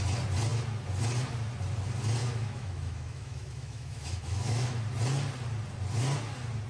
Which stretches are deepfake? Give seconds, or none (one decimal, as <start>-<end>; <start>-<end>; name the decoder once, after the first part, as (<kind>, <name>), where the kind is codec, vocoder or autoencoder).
2.2-4.8 (autoencoder, DAC-VAE)